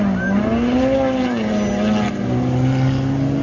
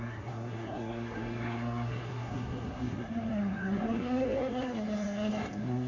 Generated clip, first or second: second